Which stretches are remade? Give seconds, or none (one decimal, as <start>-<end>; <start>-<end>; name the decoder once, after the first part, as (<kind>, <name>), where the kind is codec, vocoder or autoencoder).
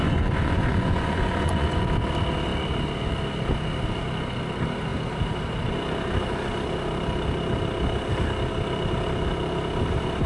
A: 0.0-1.8 (vocoder, Vocos)